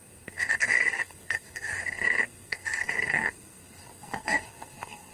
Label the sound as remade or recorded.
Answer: remade